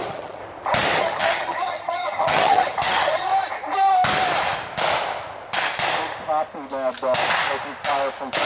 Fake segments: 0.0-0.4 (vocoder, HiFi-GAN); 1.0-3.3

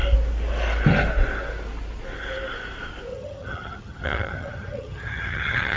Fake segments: 3.1-5.8 (vocoder, HiFi-GAN)

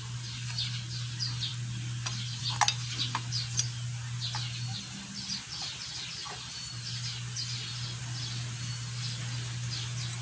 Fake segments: none

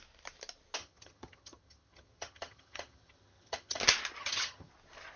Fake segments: 0.8-3.8 (vocoder, HiFi-GAN); 4.2-4.7

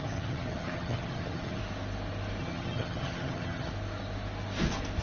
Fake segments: 0.0-1.6 (vocoder, HiFi-GAN); 2.4-3.7

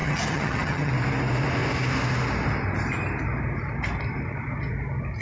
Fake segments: 0.0-0.9 (vocoder, HiFi-GAN)

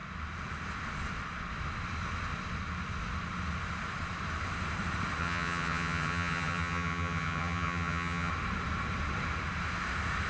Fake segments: 5.2-8.3 (vocoder, HiFi-GAN)

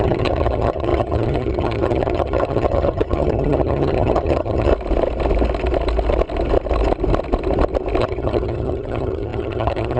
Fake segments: 0.0-4.7 (vocoder, HiFi-GAN); 8.0-10.0